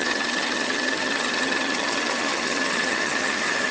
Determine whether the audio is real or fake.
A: fake